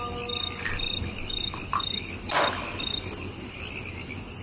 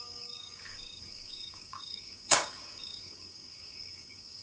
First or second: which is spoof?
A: second